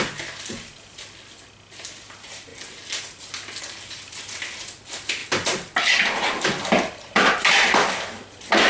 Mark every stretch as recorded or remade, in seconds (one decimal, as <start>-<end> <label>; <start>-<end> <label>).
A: 0.0-8.7 recorded